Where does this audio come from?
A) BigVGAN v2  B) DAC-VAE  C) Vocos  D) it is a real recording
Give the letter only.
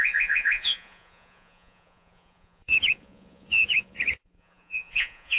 C